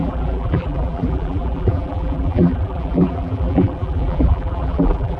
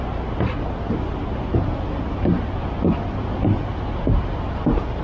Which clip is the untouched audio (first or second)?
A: second